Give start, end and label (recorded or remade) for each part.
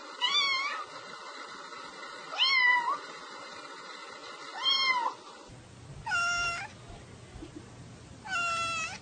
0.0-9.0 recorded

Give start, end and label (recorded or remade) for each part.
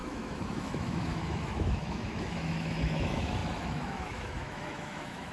0.0-5.3 remade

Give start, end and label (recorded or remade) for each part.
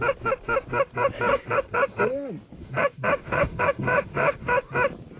0.0-1.3 recorded; 1.3-2.0 remade; 2.0-2.6 recorded; 2.6-4.7 remade; 4.7-5.2 recorded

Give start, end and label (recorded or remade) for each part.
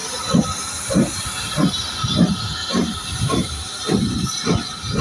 0.0-5.0 recorded